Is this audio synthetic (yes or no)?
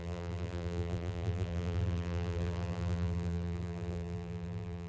yes